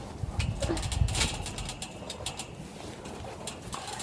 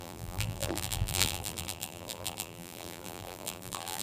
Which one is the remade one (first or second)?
second